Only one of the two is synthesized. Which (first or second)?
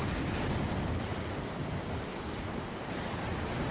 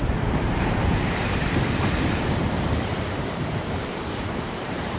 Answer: second